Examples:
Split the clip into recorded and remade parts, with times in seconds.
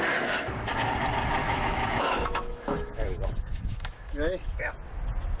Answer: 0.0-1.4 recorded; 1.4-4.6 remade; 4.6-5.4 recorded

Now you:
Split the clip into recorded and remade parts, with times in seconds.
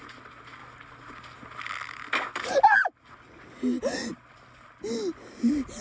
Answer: 0.0-5.8 recorded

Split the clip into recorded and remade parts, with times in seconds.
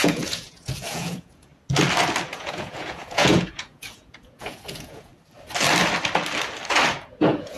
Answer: 0.0-1.5 remade; 1.5-2.3 recorded; 2.3-5.1 remade; 5.1-6.9 recorded; 6.9-7.6 remade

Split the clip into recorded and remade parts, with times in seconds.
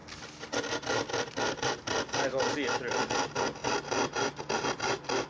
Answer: 0.0-5.3 recorded